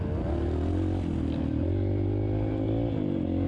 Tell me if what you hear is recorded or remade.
recorded